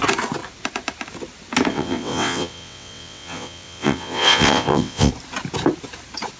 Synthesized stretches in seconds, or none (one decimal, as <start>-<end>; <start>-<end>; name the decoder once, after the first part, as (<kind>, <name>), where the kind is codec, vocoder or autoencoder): 1.7-5.1 (vocoder, WaveNeXt)